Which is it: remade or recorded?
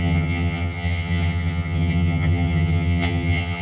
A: remade